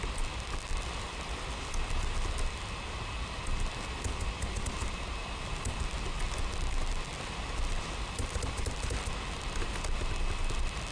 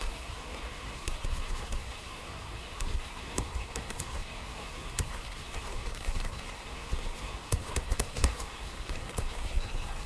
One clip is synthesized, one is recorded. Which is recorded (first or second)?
first